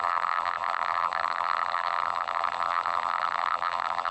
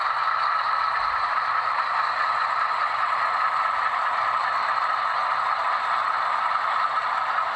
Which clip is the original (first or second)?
second